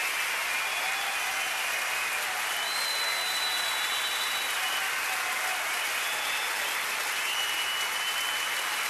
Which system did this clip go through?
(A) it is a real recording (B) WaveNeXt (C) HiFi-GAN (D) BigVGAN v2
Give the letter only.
A